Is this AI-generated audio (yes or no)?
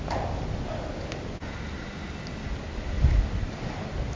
no